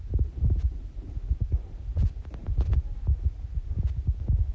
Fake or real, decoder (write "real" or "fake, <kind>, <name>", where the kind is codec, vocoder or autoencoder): real